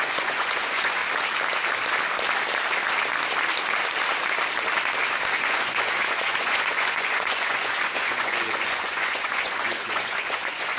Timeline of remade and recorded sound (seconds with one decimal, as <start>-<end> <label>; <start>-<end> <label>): 0.0-1.0 remade; 1.0-5.4 recorded; 5.4-10.8 remade